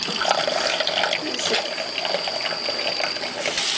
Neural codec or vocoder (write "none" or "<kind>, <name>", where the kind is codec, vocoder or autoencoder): vocoder, BigVGAN v2